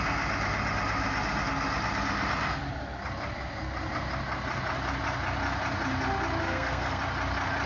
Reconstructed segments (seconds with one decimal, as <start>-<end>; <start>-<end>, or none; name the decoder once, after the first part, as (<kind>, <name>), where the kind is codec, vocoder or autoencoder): 6.4-7.0 (codec, SNAC)